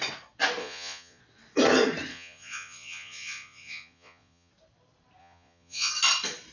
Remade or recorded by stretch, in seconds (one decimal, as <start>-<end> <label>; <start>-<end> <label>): 0.0-0.6 recorded; 0.6-1.2 remade; 1.2-2.1 recorded; 2.1-4.5 remade; 4.5-5.2 recorded; 5.2-5.9 remade; 5.9-6.5 recorded

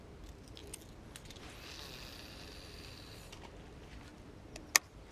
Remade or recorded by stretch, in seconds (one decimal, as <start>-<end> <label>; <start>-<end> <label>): 0.0-5.1 recorded

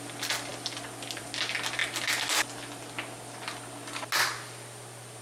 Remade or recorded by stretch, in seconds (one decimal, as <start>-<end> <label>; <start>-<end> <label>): 0.0-5.2 recorded

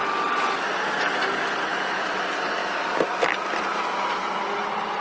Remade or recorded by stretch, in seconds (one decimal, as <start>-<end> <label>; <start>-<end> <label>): 0.0-1.7 recorded; 1.7-2.2 remade; 2.2-5.0 recorded

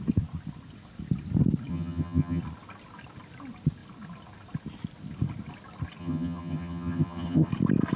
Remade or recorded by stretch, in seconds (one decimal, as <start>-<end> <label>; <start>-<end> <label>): 0.0-1.7 recorded; 1.7-2.4 remade; 2.4-6.0 recorded; 6.0-7.5 remade; 7.5-8.0 recorded

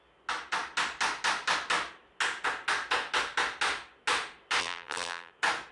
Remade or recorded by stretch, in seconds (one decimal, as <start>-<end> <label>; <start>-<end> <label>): 0.0-4.6 recorded; 4.6-5.3 remade; 5.3-5.7 recorded

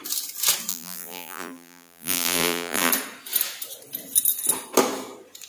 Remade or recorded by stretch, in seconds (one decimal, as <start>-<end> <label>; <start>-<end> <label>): 0.0-0.7 recorded; 0.7-2.9 remade; 2.9-5.5 recorded